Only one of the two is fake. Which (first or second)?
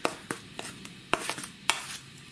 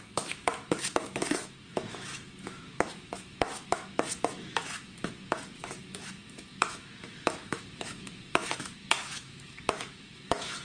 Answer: second